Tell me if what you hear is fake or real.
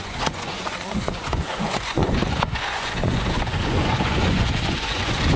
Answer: fake